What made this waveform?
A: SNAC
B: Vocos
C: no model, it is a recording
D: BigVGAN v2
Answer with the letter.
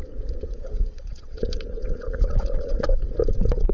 B